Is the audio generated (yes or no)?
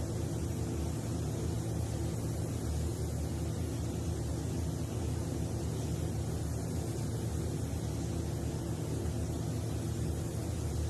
no